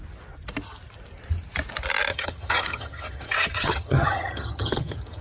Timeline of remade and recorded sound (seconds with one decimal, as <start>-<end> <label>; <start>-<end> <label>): 0.0-2.1 recorded; 2.1-5.2 remade